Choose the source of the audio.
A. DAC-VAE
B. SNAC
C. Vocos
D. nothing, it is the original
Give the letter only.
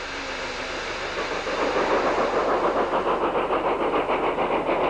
D